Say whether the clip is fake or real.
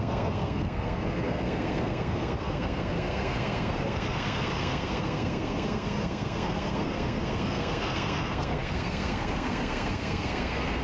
fake